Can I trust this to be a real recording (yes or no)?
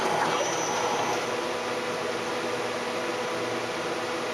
yes